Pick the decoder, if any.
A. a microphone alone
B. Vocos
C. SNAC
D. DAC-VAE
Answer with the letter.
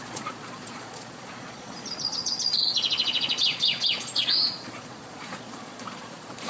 B